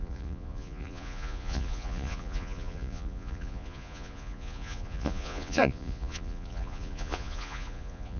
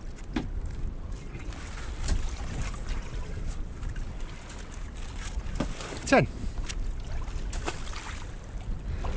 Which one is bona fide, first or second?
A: second